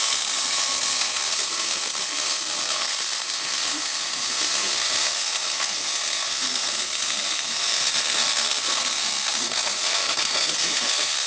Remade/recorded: remade